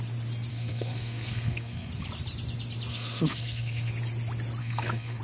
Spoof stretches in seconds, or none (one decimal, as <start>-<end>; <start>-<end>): 0.5-1.9; 2.9-3.9; 4.6-5.2